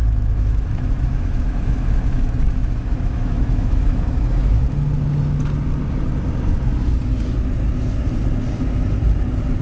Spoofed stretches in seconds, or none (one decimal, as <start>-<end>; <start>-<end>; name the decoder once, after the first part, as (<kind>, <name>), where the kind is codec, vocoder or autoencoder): 0.0-4.6 (autoencoder, DAC-VAE)